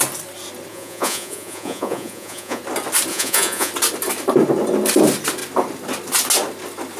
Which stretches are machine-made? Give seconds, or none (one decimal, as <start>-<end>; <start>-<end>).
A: 0.7-2.6; 3.1-3.7